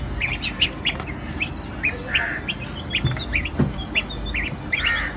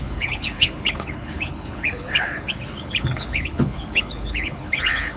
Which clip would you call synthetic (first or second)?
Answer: second